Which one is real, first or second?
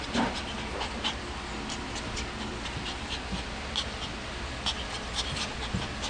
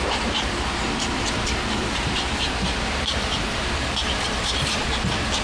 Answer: first